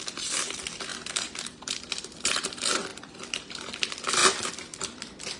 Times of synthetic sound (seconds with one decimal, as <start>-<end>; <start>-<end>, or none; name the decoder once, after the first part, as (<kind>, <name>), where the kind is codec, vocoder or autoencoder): 0.0-0.9 (vocoder, BigVGAN v2); 1.4-2.9; 3.5-5.4